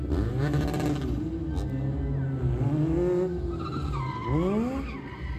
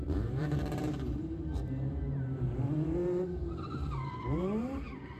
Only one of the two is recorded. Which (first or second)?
first